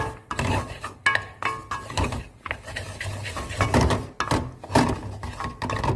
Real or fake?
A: real